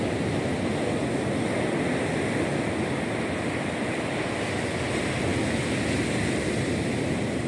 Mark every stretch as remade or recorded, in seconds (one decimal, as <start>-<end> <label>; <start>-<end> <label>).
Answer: 0.0-7.5 recorded